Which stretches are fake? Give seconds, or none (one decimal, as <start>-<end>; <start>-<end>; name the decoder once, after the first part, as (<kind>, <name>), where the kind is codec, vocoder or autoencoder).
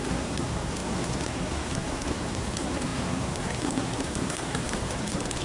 0.0-5.4 (codec, SNAC)